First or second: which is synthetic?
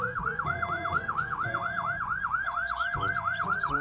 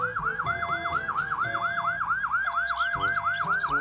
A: first